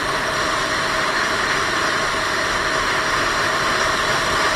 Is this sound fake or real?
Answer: real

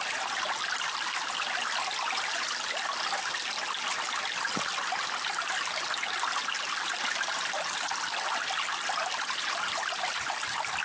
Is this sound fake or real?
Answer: real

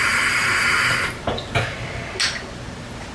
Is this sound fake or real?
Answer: real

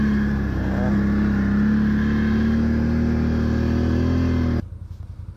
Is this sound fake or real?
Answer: real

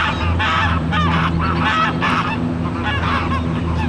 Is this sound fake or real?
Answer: fake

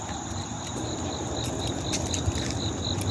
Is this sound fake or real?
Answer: real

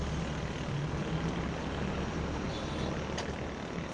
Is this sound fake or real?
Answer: real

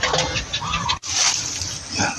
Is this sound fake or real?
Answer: real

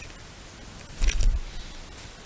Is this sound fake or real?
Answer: real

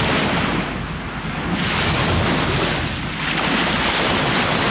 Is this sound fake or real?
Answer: real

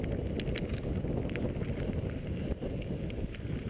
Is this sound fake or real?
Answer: real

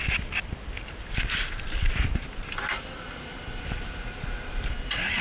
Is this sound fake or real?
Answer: fake